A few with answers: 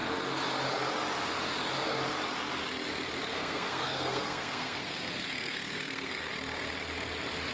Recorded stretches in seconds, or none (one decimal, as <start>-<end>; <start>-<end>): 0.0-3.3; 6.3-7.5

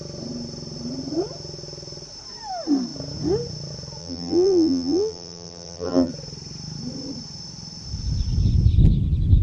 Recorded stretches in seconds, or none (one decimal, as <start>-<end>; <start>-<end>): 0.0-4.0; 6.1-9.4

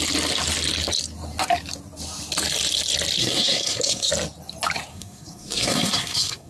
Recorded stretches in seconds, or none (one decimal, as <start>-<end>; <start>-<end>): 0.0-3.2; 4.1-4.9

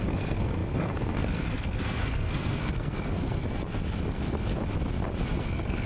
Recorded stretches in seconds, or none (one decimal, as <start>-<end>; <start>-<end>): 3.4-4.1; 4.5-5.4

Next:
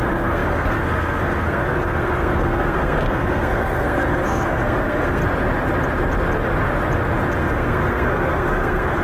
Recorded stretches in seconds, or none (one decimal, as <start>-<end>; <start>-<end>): 5.2-7.4

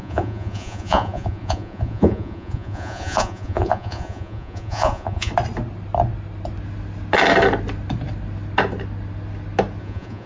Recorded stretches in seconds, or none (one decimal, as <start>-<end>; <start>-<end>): 5.3-9.8

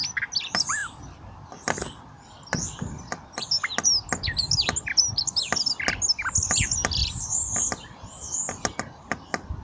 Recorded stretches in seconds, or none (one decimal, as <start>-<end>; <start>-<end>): 0.0-7.0; 8.4-9.6

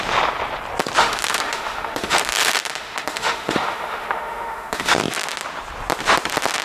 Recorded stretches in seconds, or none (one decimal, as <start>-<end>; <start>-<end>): 0.0-1.0; 5.0-6.6